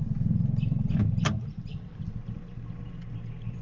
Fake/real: real